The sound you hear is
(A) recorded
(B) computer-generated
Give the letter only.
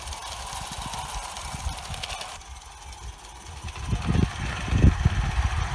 A